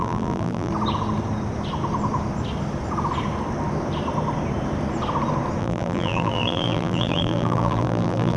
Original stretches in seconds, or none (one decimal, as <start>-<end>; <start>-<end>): 0.7-5.6